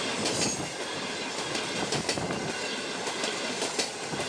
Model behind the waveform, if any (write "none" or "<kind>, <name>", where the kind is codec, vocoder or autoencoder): none